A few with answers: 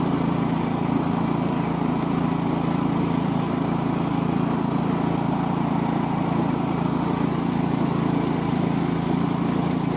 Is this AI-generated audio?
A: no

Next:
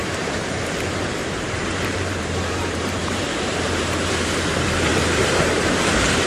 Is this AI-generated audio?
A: yes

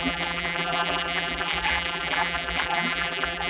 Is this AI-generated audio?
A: yes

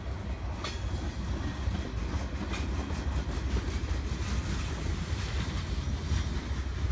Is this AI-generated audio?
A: no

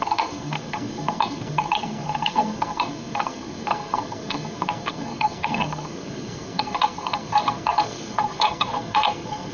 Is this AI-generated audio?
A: yes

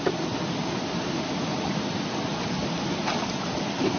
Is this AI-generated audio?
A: no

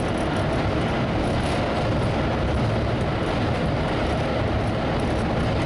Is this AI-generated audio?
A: no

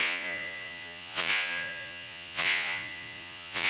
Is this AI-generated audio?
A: yes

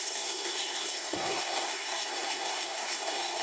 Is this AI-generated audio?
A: yes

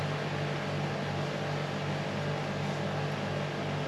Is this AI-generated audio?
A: no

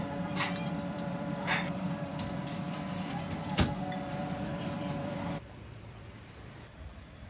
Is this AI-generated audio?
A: yes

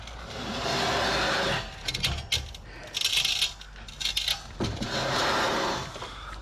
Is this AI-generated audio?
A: no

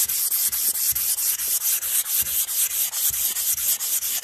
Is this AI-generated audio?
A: no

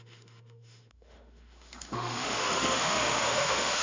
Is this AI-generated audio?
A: yes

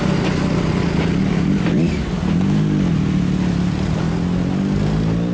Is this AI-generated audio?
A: no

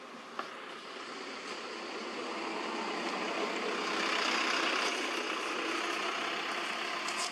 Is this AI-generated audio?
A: no